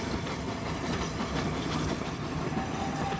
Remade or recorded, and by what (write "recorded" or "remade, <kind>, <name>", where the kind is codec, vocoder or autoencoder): recorded